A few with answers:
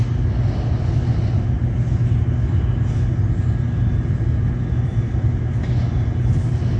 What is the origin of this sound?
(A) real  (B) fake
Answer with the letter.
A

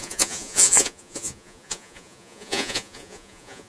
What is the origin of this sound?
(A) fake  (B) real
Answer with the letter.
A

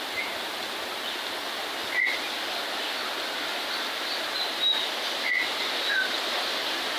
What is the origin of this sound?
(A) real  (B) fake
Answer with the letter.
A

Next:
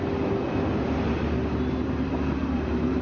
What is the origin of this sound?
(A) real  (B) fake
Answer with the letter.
A